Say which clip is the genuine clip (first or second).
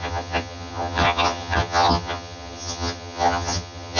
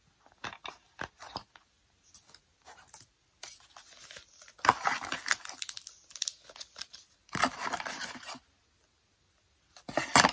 second